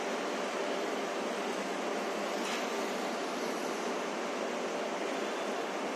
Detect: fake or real real